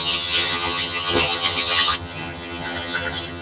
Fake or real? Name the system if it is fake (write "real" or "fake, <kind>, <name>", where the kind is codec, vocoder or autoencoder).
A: fake, vocoder, HiFi-GAN